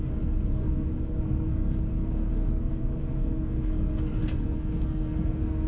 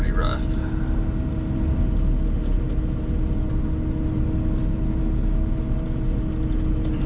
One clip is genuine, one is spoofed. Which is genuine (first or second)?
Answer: second